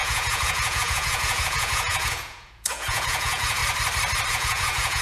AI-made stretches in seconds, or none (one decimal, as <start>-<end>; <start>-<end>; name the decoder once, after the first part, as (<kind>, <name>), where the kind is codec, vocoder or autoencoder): 0.0-3.6 (vocoder, Vocos); 4.3-5.0